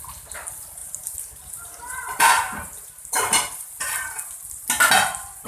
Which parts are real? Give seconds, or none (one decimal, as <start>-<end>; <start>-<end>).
0.0-0.8; 4.1-5.5